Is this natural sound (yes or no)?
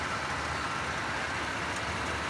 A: yes